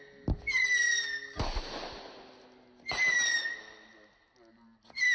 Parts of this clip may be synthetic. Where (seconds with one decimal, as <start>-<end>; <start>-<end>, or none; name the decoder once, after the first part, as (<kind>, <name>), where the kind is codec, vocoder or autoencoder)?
none